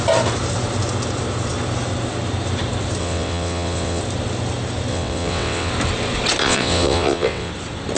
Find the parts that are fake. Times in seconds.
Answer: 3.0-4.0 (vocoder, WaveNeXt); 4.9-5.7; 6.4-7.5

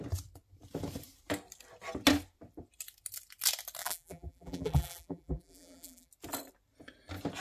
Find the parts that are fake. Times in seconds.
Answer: 3.8-6.1 (vocoder, BigVGAN v2)

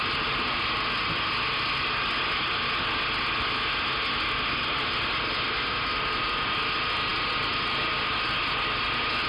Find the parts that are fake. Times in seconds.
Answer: none

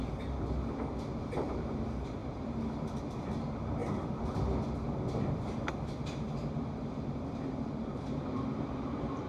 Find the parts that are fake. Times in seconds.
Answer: 1.2-3.8 (vocoder, BigVGAN v2); 5.3-9.3

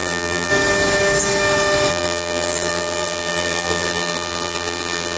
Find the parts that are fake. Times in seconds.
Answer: 0.0-0.5 (vocoder, BigVGAN v2); 1.9-5.2

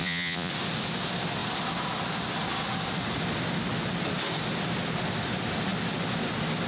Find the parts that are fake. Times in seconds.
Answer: 0.0-0.5 (vocoder, Vocos)